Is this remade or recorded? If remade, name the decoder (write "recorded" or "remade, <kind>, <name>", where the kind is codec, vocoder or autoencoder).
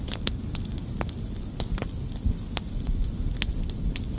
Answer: recorded